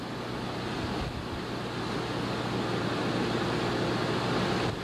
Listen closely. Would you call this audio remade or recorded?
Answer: recorded